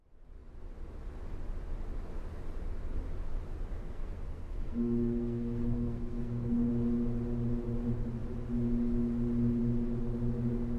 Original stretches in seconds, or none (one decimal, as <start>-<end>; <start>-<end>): 0.0-3.7; 6.7-10.8